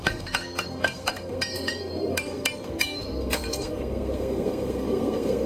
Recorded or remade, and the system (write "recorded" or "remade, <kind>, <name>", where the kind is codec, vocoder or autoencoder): remade, codec, SNAC